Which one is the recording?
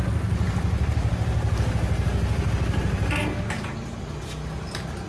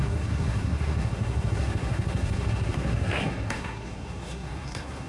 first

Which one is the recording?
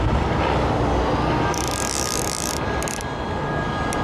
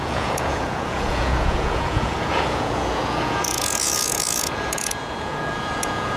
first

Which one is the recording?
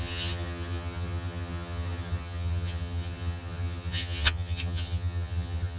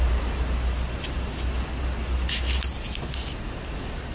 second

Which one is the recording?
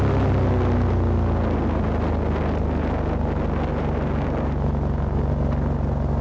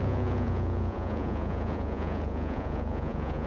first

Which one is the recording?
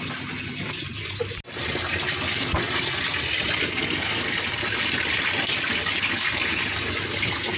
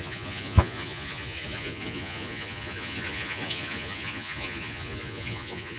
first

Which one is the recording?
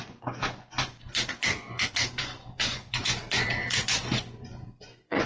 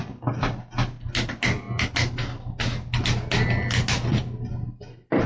second